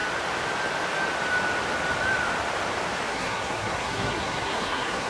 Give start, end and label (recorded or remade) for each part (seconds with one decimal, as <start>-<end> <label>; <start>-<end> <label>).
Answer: 0.0-3.1 recorded; 3.1-5.1 remade